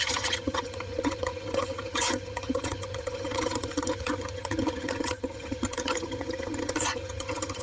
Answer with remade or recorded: remade